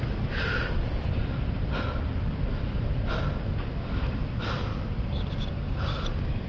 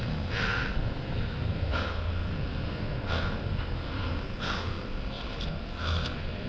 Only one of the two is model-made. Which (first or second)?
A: second